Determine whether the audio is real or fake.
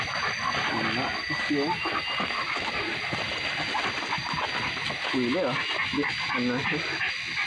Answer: real